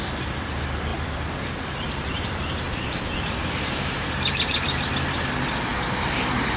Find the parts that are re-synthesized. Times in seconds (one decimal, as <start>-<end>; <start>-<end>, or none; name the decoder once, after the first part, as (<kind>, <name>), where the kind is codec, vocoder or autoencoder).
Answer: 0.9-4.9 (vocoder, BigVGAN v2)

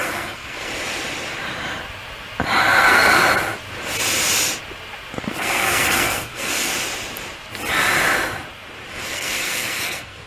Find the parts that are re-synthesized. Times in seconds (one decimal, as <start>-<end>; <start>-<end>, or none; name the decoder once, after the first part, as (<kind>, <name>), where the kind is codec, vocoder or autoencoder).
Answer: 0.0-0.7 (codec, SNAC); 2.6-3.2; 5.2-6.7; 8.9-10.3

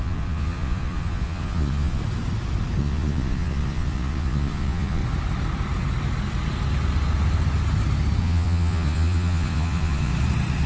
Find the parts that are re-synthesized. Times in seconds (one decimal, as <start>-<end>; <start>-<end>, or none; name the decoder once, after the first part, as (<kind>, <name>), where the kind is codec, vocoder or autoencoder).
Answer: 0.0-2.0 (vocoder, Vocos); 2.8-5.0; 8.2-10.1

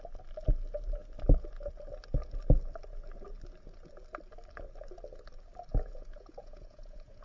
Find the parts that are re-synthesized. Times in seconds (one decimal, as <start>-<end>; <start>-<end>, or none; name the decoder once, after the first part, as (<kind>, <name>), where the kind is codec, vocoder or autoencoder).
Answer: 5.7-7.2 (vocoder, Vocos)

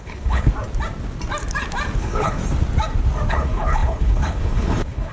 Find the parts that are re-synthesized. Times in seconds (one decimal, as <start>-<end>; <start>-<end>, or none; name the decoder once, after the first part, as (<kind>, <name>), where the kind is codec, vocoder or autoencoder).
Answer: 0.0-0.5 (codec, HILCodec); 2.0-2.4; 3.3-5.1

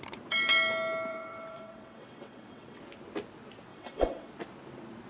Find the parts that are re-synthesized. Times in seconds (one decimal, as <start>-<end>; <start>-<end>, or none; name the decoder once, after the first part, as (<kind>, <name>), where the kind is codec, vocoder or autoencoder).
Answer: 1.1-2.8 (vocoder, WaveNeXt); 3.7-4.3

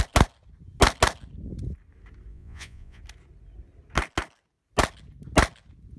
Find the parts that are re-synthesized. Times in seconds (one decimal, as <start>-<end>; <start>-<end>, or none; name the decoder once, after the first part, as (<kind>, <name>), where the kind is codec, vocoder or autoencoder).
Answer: 2.3-3.0 (vocoder, Vocos)